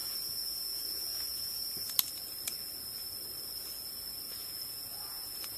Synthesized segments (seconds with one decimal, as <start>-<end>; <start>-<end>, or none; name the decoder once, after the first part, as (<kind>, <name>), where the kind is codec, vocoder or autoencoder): 0.0-1.7 (vocoder, Vocos); 4.4-5.6